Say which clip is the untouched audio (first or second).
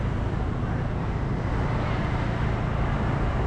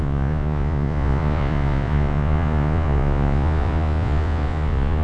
first